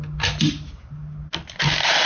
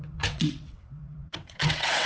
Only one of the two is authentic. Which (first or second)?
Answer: first